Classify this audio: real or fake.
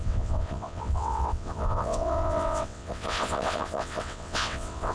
fake